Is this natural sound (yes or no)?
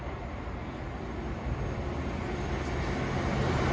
yes